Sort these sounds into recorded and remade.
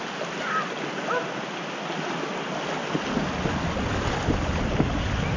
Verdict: recorded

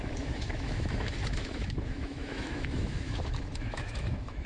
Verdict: remade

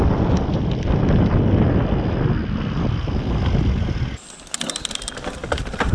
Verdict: recorded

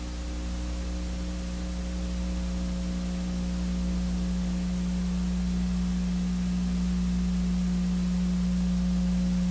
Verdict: recorded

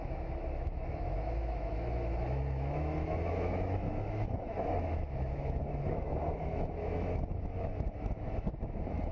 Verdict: remade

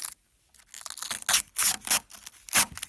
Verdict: recorded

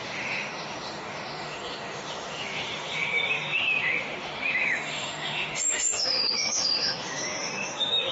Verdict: remade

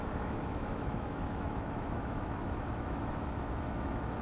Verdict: remade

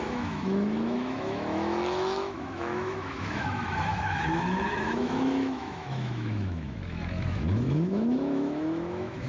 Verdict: remade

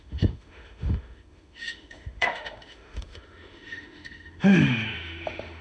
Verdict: remade